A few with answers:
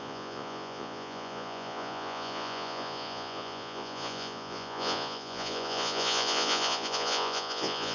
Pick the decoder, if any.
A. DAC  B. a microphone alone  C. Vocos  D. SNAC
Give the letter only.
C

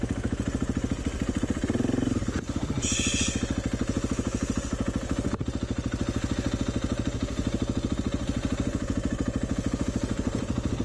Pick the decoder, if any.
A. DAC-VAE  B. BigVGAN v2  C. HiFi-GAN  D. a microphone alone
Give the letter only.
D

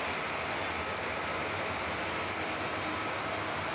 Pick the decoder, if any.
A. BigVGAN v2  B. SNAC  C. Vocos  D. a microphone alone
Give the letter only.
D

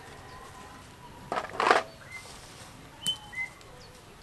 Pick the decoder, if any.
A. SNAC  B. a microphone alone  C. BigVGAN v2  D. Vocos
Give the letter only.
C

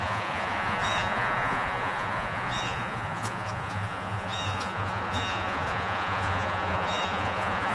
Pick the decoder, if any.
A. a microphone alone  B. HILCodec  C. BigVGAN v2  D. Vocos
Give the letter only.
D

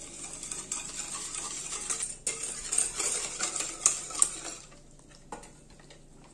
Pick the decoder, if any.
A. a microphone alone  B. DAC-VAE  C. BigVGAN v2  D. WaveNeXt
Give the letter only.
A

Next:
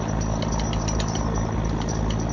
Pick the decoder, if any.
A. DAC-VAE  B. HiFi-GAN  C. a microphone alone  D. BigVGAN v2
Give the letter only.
C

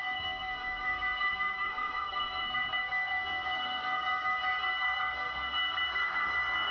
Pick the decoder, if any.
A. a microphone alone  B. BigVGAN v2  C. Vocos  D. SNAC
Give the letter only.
D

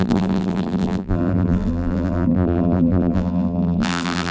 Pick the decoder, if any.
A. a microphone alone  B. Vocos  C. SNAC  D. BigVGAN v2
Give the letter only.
D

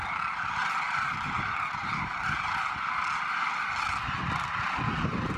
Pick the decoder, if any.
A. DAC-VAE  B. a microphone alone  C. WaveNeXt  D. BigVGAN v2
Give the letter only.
B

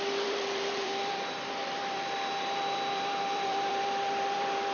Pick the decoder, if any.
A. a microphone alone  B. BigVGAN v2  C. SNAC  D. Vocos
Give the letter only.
B